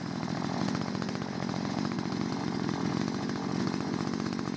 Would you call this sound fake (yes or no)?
yes